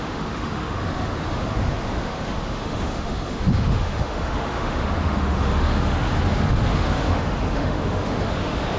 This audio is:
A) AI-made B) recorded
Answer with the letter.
A